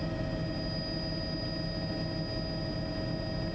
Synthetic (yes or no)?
no